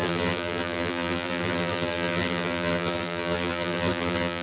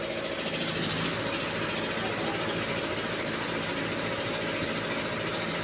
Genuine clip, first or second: second